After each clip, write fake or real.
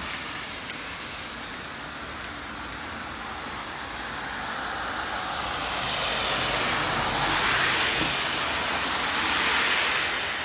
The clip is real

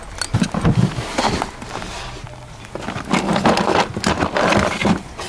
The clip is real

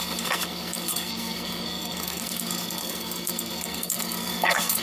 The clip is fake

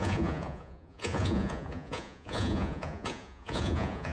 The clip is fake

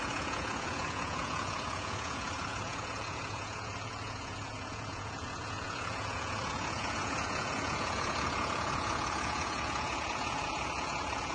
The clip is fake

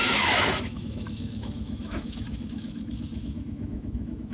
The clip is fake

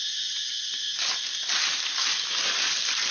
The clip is real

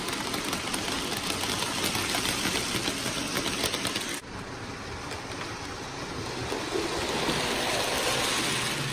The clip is real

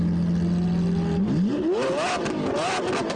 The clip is real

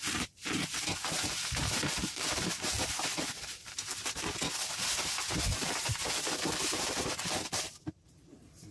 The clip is fake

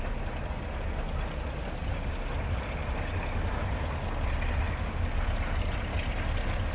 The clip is real